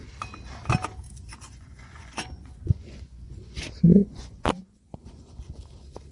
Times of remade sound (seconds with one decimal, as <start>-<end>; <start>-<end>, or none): 1.3-3.6; 4.0-5.6